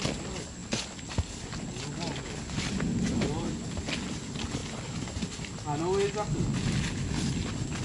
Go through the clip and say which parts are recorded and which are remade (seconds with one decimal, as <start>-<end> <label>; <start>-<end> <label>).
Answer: 0.0-7.8 recorded